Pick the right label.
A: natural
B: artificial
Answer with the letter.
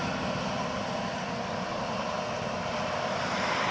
A